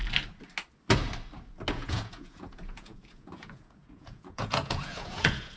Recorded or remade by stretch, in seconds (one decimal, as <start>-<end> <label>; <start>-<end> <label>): 0.0-1.7 recorded; 1.7-5.6 remade